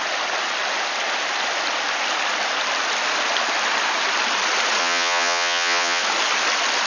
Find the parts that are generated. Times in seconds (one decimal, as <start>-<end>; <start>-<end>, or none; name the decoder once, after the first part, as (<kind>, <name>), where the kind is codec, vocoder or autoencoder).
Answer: 4.8-6.0 (vocoder, HiFi-GAN)